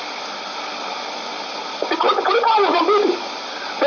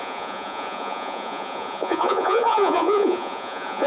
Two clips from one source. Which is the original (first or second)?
first